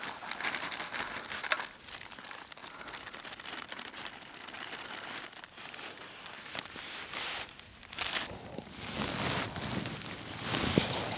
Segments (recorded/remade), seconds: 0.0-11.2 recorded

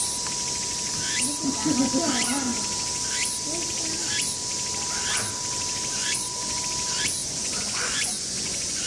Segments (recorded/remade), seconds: 0.0-6.0 recorded; 6.0-6.6 remade; 6.6-7.2 recorded; 7.2-8.9 remade

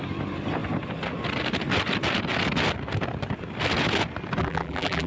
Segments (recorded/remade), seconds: 0.0-4.4 recorded; 4.4-5.1 remade

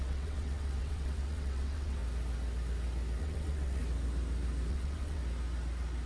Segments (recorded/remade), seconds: 0.0-2.0 remade; 2.0-3.2 recorded; 3.2-3.8 remade; 3.8-4.7 recorded; 4.7-5.2 remade; 5.2-6.1 recorded

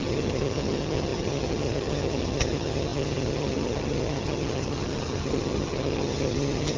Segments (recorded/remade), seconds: 0.0-6.8 remade

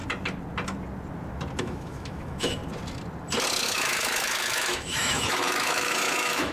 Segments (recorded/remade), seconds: 0.0-1.6 recorded; 1.6-2.6 remade; 2.6-3.6 recorded; 3.6-6.5 remade

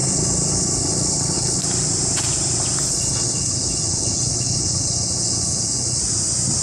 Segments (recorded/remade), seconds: 0.0-1.6 remade; 1.6-2.9 recorded; 2.9-6.0 remade; 6.0-6.6 recorded